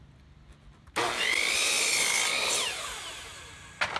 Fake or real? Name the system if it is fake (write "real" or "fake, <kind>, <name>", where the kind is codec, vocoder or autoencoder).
real